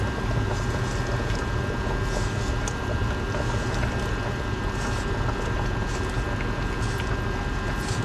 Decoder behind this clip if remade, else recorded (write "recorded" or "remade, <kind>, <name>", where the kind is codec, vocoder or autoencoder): recorded